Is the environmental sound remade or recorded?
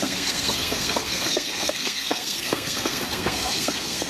remade